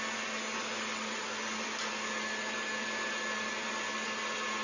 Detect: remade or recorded recorded